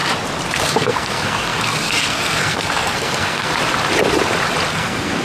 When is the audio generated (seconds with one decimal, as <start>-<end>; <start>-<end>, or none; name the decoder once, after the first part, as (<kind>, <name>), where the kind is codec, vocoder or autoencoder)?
0.5-3.5 (codec, SNAC); 4.7-5.2